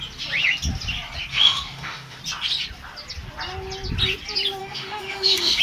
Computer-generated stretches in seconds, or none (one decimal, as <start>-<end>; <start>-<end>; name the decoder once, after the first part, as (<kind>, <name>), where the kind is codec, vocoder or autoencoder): 1.3-2.2 (autoencoder, DAC-VAE); 4.6-5.6